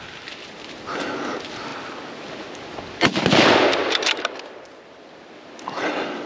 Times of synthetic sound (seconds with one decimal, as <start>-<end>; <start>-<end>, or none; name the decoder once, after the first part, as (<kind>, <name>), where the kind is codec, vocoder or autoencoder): none